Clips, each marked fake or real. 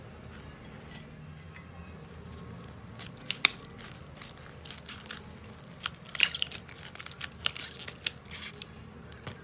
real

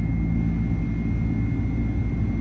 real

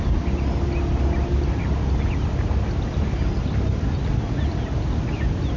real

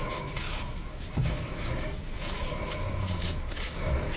fake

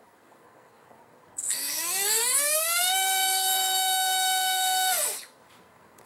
fake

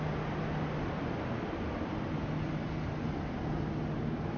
real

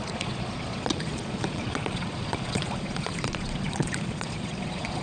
fake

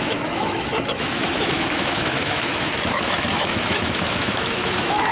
fake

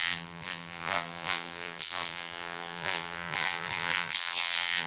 fake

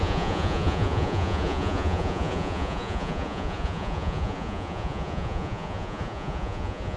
fake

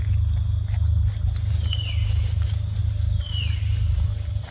real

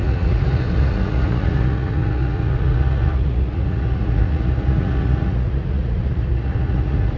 fake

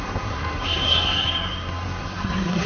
fake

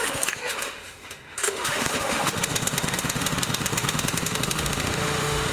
fake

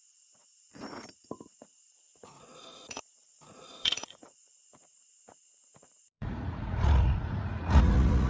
fake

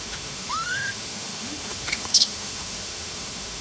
fake